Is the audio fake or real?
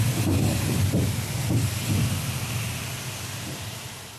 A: real